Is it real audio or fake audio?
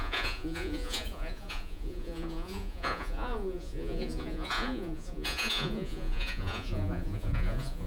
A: fake